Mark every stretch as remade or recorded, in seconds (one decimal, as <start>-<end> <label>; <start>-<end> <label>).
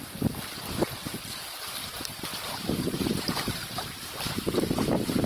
0.0-1.8 recorded; 1.8-5.3 remade